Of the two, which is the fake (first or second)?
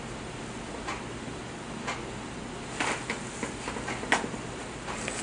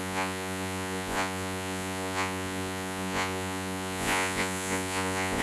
second